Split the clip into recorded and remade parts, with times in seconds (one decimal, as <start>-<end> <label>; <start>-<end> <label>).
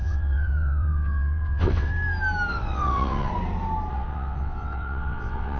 0.0-1.9 remade; 1.9-2.5 recorded; 2.5-3.3 remade; 3.3-3.9 recorded; 3.9-5.6 remade